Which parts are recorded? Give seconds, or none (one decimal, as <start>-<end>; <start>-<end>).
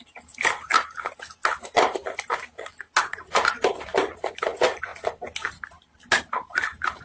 0.0-7.0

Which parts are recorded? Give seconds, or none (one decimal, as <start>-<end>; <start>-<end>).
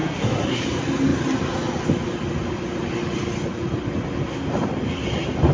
0.6-5.5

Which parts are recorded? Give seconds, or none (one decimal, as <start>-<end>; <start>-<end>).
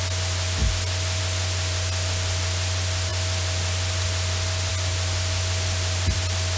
0.0-6.6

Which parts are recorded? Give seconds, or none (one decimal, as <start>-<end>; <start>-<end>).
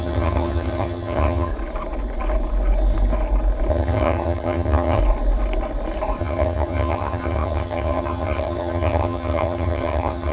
1.5-3.7; 5.0-6.2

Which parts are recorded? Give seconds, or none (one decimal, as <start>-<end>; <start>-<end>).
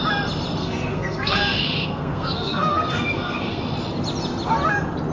0.0-0.6; 3.6-5.1